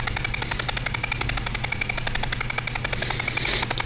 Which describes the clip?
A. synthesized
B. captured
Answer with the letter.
B